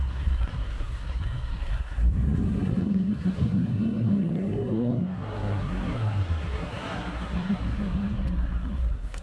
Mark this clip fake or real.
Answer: fake